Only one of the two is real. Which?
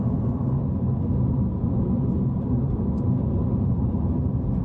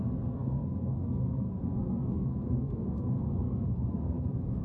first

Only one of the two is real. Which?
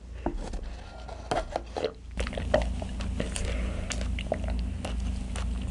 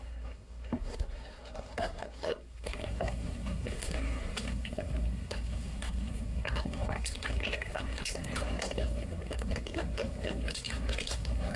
first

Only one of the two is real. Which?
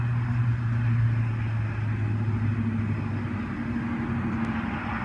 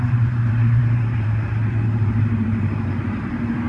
first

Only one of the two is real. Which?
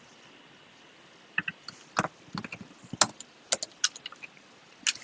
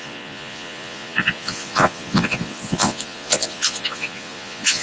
first